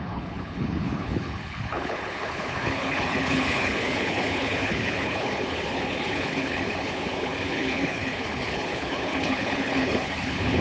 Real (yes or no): no